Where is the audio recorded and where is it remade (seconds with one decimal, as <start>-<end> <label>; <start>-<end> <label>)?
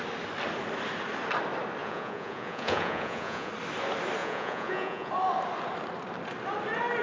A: 0.0-1.8 recorded; 1.8-3.5 remade; 3.5-4.2 recorded; 4.2-5.1 remade; 5.1-7.0 recorded